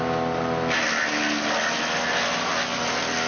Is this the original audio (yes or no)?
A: yes